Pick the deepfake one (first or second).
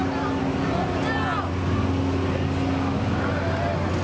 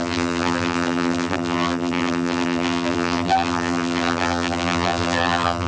second